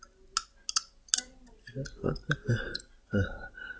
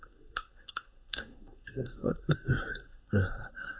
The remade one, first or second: second